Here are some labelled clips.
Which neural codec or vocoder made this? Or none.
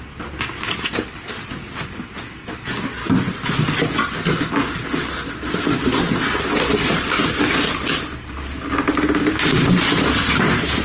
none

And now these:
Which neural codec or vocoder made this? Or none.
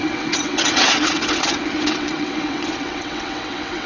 vocoder, WaveNeXt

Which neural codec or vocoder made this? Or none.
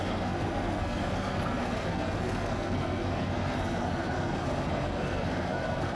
codec, SNAC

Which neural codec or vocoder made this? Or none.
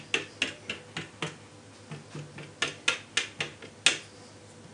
none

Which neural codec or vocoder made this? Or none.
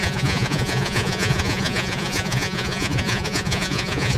vocoder, Vocos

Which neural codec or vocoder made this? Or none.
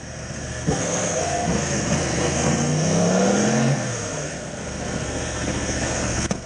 codec, SNAC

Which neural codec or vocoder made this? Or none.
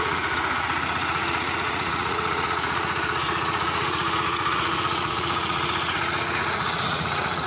vocoder, Vocos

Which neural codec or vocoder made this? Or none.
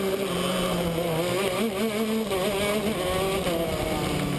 none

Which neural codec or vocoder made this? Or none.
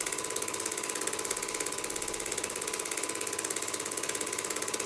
none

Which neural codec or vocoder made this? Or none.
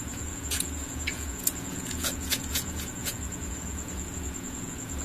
vocoder, Vocos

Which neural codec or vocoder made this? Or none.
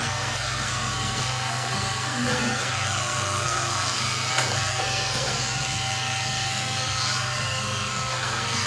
codec, SNAC